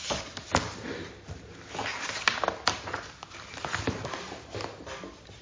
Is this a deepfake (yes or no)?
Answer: no